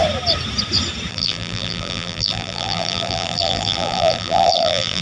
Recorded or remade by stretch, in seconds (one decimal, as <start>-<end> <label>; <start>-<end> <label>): 0.0-1.1 recorded; 1.1-5.0 remade